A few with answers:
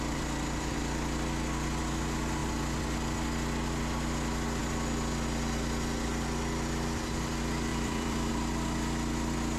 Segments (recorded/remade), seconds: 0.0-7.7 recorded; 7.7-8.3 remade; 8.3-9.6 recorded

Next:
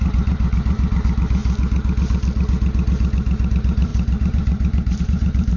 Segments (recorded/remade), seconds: 0.0-1.4 remade; 1.4-3.5 recorded; 3.5-5.6 remade